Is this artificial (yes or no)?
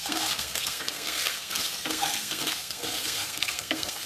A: yes